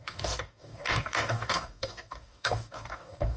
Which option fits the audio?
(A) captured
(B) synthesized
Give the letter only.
B